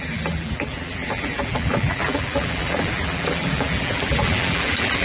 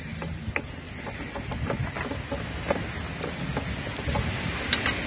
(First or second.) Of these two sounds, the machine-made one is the first